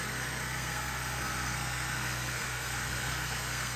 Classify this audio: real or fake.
fake